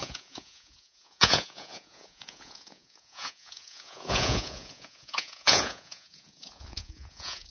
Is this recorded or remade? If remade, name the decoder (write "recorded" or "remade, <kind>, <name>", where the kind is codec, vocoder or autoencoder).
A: remade, vocoder, Vocos